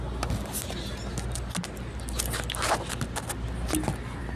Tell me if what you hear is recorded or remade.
recorded